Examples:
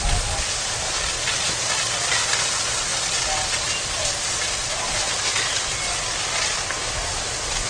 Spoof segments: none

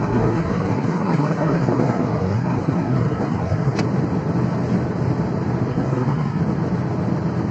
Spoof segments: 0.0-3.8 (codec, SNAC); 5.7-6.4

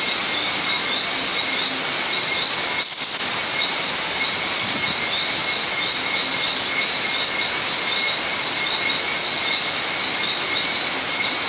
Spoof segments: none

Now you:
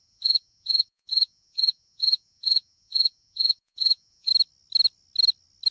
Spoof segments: 0.0-4.3 (vocoder, Vocos)

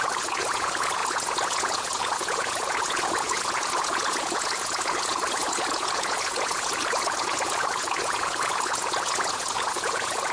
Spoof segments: 0.0-10.3 (vocoder, Vocos)

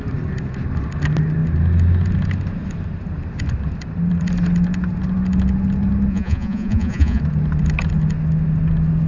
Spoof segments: 6.1-7.2 (vocoder, Vocos)

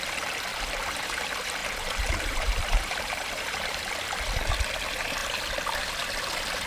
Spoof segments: 0.5-1.2 (vocoder, BigVGAN v2); 1.6-3.9